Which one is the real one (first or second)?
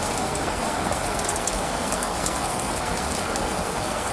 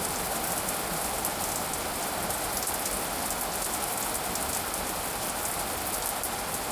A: second